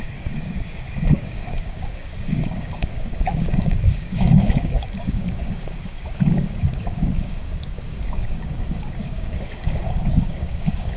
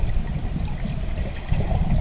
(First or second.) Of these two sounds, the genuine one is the second